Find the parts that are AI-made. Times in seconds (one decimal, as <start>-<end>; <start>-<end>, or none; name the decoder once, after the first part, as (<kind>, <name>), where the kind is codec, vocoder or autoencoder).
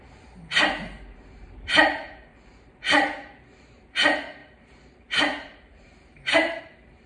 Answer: 0.0-7.1 (vocoder, BigVGAN v2)